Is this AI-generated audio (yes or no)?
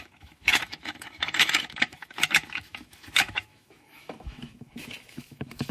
yes